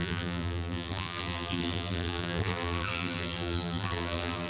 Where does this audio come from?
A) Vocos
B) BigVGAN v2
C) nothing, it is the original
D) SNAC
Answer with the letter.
B